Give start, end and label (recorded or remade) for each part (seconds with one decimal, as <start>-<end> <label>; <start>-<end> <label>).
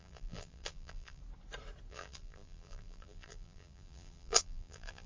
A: 0.0-1.2 remade; 1.2-1.9 recorded; 1.9-5.1 remade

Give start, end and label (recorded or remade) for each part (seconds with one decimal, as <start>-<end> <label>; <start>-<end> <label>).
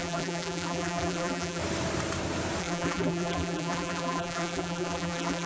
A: 0.0-1.6 remade; 1.6-2.6 recorded; 2.6-5.5 remade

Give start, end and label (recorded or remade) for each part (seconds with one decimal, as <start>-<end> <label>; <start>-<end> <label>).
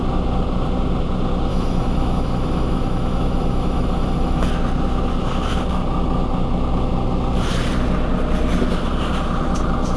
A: 0.0-1.5 recorded; 1.5-4.5 remade; 4.5-10.0 recorded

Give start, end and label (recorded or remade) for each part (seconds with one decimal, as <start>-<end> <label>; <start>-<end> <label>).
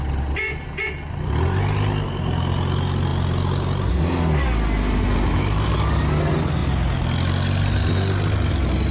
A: 0.0-8.9 recorded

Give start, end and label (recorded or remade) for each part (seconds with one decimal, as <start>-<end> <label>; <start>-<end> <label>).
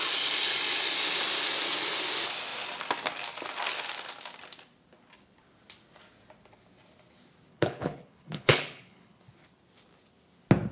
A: 0.0-7.5 recorded; 7.5-9.2 remade; 9.2-10.7 recorded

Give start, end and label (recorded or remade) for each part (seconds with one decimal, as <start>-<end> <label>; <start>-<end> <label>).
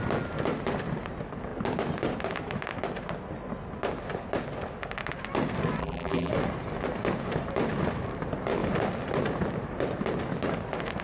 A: 0.0-5.8 recorded; 5.8-6.3 remade; 6.3-11.0 recorded